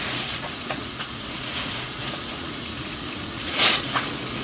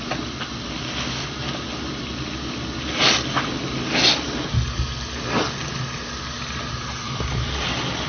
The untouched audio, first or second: second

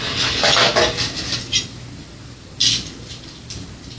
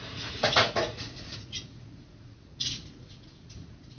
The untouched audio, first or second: first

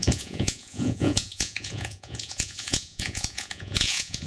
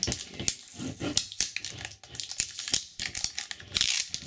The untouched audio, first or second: second